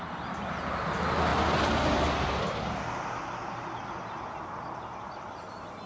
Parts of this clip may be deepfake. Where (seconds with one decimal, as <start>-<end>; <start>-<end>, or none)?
none